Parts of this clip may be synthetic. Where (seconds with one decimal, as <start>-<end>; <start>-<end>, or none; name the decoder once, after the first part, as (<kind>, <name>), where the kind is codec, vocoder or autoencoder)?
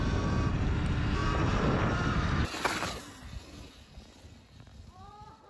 1.2-3.0 (vocoder, BigVGAN v2)